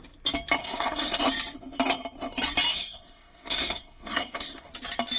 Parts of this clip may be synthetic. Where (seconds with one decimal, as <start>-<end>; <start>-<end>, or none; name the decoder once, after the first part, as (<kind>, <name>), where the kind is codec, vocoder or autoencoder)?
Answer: 0.6-1.2 (codec, SNAC); 2.7-4.7